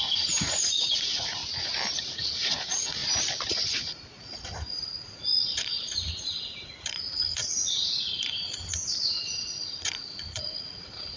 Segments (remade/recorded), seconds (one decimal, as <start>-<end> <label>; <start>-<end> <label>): 0.0-1.4 remade; 1.4-2.0 recorded; 2.0-3.0 remade; 3.0-3.5 recorded; 3.5-11.2 remade